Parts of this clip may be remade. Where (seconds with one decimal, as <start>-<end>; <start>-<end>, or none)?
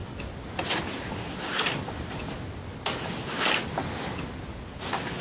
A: none